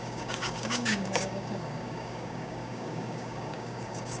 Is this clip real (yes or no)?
no